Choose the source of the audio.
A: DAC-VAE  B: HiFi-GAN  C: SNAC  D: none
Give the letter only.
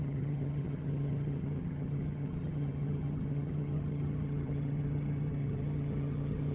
B